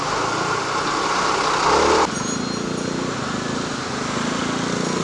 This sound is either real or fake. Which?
real